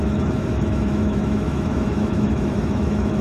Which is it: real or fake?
fake